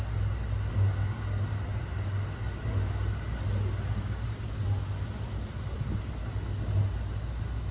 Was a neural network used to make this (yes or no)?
no